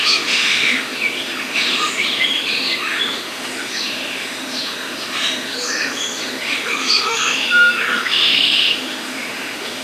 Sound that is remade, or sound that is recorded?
remade